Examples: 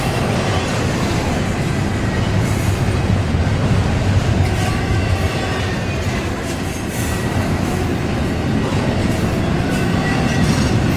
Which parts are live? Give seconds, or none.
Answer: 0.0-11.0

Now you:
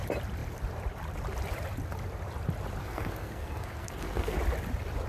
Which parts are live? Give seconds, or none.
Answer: 0.0-2.8; 4.4-5.1

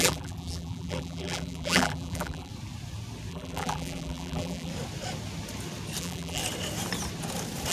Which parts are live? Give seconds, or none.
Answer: 2.5-3.3; 4.7-6.0; 6.4-7.7

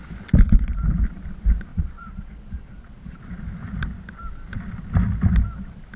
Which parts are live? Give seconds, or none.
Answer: 0.0-1.7; 3.2-6.0

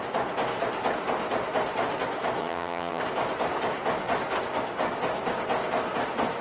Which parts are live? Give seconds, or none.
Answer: 0.0-2.4; 3.0-6.4

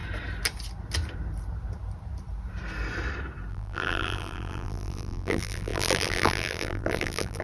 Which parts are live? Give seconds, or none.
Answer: 0.0-3.5

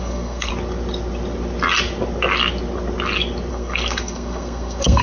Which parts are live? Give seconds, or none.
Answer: 0.5-3.5